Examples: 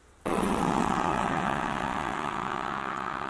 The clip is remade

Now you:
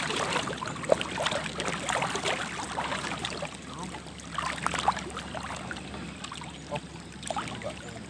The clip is recorded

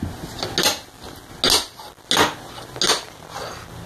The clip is recorded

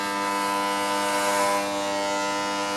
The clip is recorded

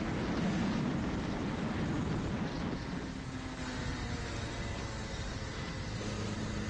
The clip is recorded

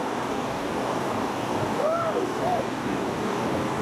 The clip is remade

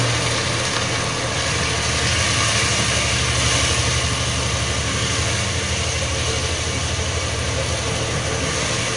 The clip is recorded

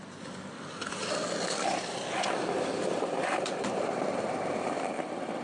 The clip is remade